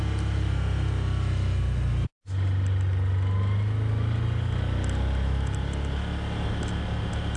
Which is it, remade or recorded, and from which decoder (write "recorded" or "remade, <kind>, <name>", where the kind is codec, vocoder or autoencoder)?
recorded